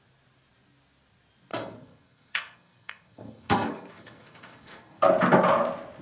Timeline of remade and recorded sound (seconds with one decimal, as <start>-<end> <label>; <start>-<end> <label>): 0.0-1.5 recorded; 1.5-5.1 remade; 5.1-6.0 recorded